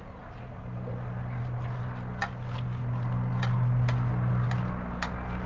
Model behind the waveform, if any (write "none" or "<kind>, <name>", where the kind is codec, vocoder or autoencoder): none